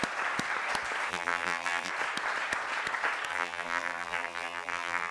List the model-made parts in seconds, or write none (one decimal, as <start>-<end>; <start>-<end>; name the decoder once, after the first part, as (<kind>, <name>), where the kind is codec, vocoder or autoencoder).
1.1-1.9 (vocoder, BigVGAN v2); 3.3-5.1